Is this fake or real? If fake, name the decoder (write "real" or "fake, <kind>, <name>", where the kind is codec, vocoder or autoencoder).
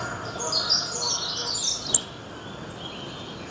real